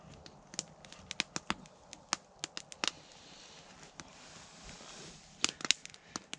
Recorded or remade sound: recorded